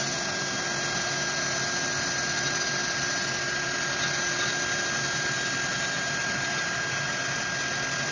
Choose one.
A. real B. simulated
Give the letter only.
A